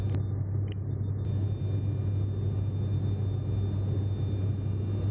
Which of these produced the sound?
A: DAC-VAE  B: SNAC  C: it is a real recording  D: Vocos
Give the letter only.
C